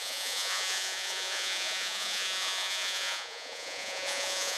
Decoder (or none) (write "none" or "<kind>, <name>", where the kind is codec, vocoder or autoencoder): vocoder, Vocos